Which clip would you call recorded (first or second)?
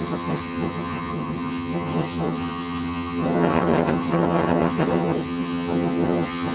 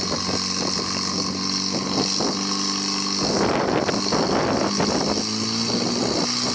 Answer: second